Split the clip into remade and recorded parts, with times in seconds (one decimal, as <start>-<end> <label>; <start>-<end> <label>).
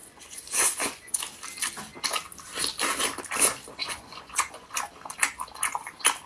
0.0-1.2 remade; 1.2-3.8 recorded; 3.8-4.7 remade; 4.7-6.3 recorded